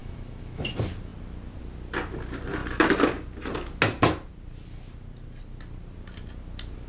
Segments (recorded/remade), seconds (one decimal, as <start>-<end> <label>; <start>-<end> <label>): 0.0-0.7 remade; 0.7-6.9 recorded